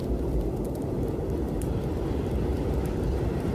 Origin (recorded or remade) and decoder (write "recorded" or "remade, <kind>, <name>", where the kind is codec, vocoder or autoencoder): remade, vocoder, BigVGAN v2